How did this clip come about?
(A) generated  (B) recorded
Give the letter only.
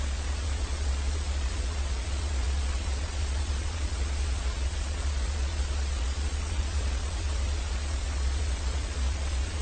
A